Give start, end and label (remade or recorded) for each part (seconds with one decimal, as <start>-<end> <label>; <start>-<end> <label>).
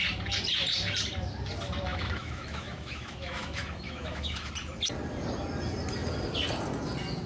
0.0-1.9 recorded; 1.9-4.5 remade; 4.5-7.3 recorded